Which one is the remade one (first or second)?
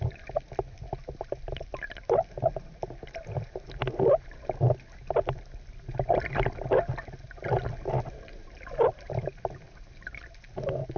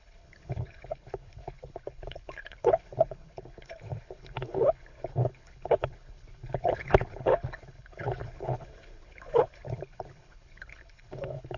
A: second